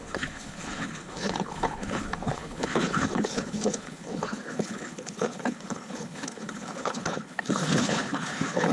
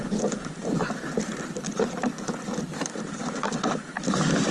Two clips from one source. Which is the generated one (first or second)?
first